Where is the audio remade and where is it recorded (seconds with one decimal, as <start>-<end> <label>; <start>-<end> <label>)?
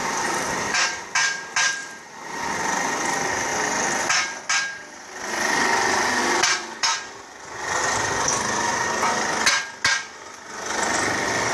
0.0-1.0 remade; 1.0-1.8 recorded; 1.8-2.4 remade; 2.4-11.5 recorded